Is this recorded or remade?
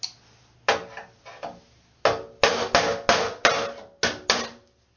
recorded